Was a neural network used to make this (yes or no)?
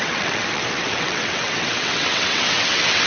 yes